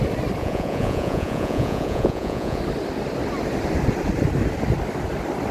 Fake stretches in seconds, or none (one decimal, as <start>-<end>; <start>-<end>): 0.4-2.6